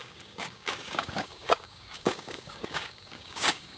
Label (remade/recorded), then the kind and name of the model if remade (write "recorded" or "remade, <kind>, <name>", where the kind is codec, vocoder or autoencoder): remade, codec, DAC